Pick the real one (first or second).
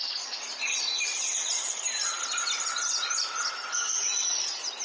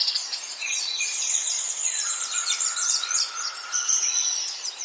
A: first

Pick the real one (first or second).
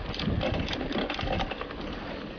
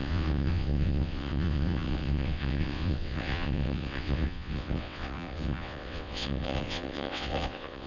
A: first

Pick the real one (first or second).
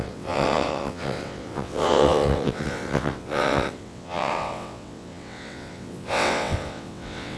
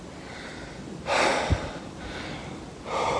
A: second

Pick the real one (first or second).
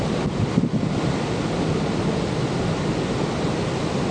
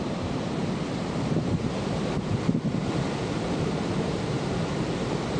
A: first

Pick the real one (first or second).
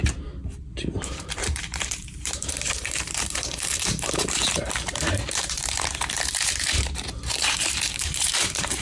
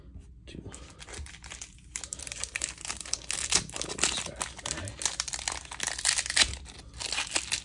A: second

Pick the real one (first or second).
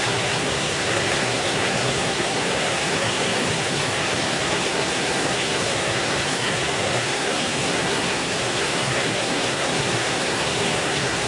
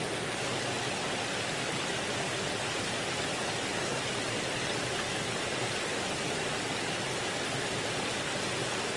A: second